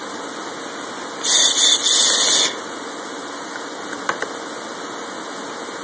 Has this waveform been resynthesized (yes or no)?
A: no